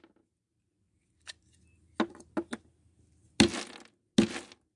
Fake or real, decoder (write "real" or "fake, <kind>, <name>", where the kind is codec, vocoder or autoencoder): real